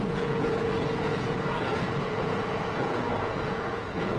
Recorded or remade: remade